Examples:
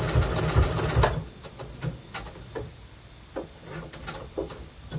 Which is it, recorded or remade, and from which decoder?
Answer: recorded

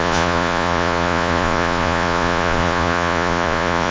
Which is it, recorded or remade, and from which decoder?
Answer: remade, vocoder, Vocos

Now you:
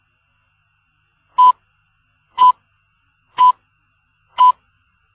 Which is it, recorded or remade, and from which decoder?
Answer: recorded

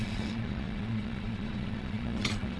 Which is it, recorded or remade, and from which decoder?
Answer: remade, vocoder, Vocos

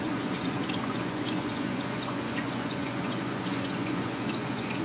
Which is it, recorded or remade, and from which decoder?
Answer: remade, vocoder, Vocos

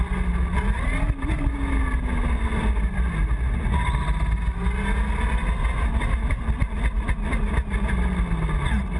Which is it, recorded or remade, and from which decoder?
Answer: recorded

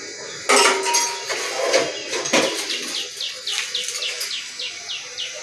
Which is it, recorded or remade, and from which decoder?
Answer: recorded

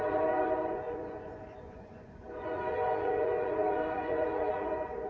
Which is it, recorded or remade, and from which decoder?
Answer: remade, vocoder, Vocos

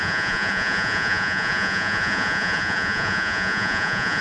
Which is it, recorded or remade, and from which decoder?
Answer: remade, vocoder, Vocos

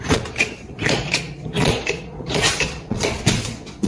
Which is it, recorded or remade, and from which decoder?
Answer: remade, vocoder, Vocos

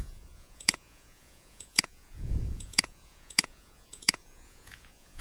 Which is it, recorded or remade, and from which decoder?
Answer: remade, vocoder, Vocos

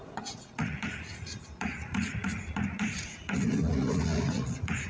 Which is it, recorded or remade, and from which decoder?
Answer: remade, vocoder, Vocos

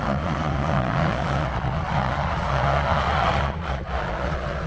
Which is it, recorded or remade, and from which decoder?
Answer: remade, vocoder, Vocos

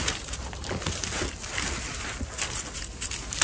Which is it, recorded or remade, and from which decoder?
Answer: recorded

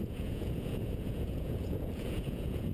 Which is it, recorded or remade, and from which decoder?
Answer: remade, vocoder, Vocos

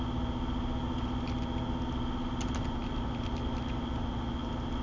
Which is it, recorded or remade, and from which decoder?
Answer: recorded